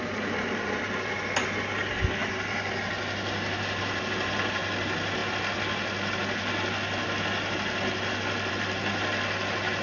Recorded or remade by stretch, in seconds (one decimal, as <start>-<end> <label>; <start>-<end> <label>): 0.0-2.2 recorded; 2.2-4.0 remade; 4.0-9.8 recorded